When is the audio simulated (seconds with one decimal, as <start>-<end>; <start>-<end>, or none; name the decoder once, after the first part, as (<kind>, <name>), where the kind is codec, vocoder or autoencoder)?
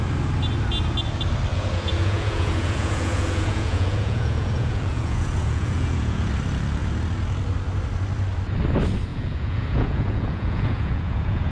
1.5-6.3 (vocoder, Vocos); 9.1-11.5